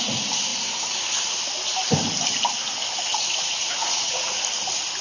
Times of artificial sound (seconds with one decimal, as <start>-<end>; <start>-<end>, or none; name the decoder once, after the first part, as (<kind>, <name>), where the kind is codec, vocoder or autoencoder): 3.1-4.4 (vocoder, Vocos)